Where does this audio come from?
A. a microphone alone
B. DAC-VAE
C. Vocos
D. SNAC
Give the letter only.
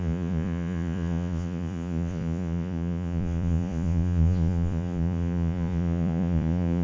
C